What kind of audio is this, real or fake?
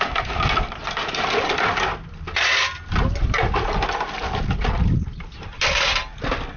real